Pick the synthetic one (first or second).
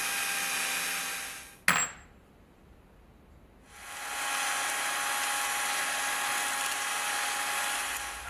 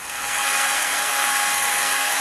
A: second